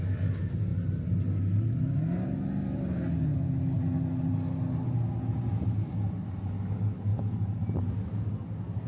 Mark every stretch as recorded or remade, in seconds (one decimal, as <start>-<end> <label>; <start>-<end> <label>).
0.0-8.9 recorded